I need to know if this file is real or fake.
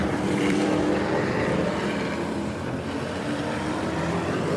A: fake